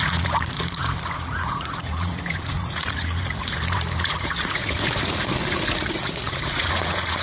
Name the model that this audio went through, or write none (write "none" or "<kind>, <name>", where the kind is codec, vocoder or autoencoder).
vocoder, Vocos